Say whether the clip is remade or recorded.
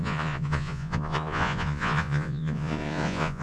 remade